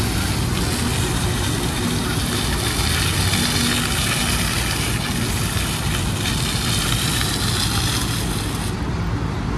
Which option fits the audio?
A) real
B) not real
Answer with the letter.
A